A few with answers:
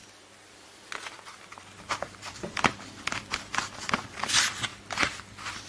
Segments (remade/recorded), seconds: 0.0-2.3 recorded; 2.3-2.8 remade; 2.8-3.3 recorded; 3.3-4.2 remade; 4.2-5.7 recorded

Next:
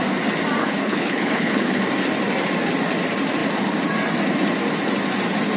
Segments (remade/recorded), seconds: 0.0-0.6 recorded; 0.6-1.8 remade; 1.8-5.6 recorded